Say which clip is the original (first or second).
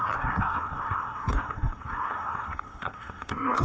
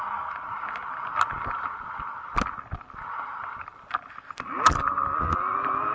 second